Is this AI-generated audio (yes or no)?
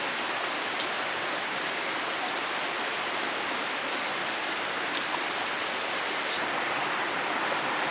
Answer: no